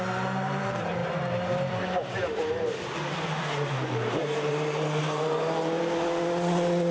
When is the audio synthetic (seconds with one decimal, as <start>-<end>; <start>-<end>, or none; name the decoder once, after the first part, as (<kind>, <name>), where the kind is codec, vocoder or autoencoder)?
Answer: 1.0-4.5 (vocoder, BigVGAN v2); 5.0-5.8